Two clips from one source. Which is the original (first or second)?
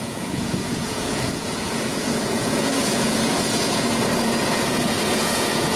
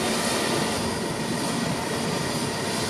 second